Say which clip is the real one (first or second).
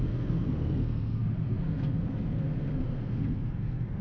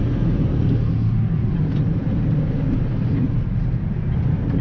second